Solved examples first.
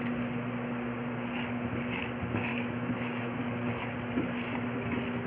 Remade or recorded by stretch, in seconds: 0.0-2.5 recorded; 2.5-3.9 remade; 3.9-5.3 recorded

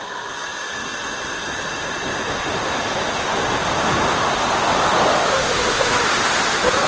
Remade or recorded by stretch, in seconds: 0.0-5.2 recorded; 5.2-5.9 remade; 5.9-6.9 recorded

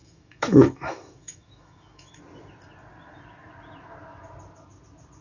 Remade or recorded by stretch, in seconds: 0.0-2.2 remade; 2.2-5.2 recorded

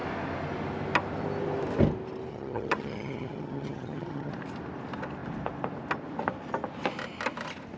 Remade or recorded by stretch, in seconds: 0.0-2.3 recorded; 2.3-4.3 remade; 4.3-7.8 recorded

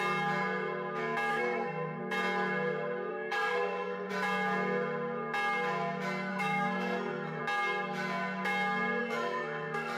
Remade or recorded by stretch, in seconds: 0.0-1.3 recorded; 1.3-2.0 remade; 2.0-3.1 recorded; 3.1-4.1 remade; 4.1-6.3 recorded; 6.3-7.4 remade; 7.4-9.0 recorded; 9.0-10.0 remade